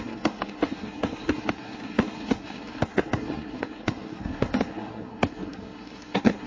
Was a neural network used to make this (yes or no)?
yes